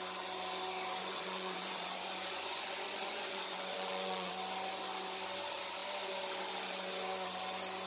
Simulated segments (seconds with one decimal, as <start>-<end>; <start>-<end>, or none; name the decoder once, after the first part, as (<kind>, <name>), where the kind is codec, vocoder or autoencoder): 1.0-4.3 (vocoder, Vocos)

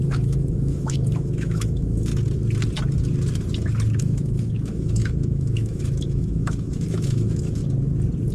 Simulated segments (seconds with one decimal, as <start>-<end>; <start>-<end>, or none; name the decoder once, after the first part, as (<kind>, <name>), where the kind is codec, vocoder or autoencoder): 0.0-2.1 (autoencoder, DAC-VAE); 4.0-7.6

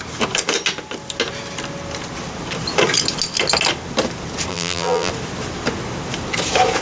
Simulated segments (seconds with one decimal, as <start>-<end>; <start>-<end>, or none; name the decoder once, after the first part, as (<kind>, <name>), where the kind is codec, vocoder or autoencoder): 4.5-5.1 (vocoder, BigVGAN v2)

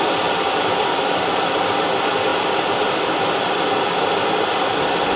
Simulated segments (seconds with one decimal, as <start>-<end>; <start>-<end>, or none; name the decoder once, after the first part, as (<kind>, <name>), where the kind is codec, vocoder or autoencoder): none

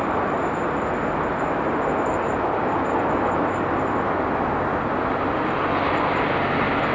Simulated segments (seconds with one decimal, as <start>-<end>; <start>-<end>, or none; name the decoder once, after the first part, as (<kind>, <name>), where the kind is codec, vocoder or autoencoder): none

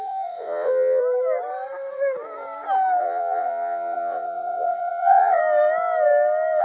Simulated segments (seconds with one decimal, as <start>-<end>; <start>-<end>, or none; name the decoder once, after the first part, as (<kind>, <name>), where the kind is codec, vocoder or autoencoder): 0.0-1.0 (vocoder, Vocos); 3.0-5.4